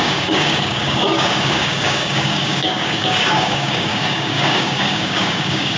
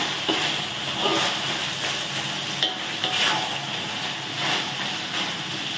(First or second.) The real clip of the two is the second